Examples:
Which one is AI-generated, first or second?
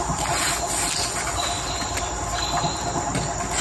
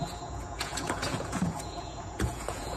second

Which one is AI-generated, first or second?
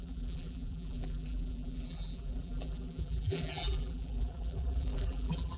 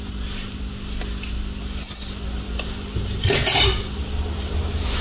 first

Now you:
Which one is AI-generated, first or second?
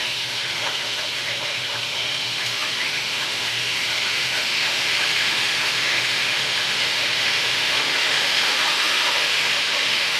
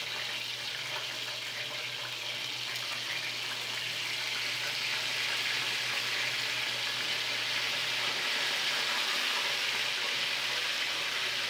first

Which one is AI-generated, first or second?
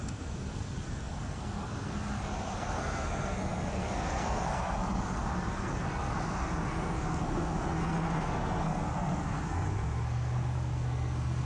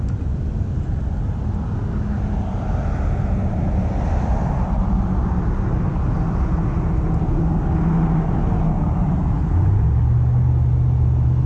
first